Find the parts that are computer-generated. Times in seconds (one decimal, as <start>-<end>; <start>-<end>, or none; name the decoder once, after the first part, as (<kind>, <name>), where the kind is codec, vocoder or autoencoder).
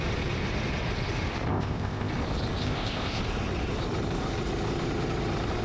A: 1.5-2.1 (codec, ZipCodec); 2.6-3.2